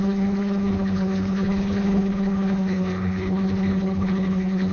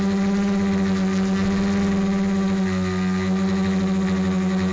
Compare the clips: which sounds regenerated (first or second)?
first